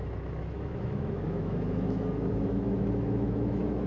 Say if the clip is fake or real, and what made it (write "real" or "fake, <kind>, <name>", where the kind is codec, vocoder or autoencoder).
fake, autoencoder, DAC-VAE